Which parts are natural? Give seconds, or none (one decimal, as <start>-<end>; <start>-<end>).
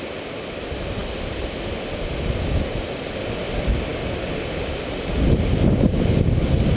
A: 0.0-6.8